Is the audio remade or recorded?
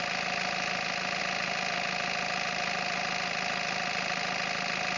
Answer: recorded